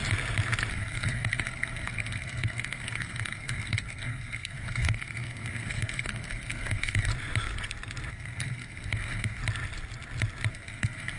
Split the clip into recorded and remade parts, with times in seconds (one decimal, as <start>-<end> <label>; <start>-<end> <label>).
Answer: 0.0-0.7 recorded; 0.7-7.1 remade; 7.1-8.1 recorded; 8.1-9.4 remade; 9.4-10.5 recorded; 10.5-11.2 remade